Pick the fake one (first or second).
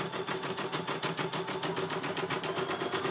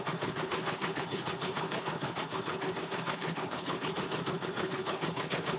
second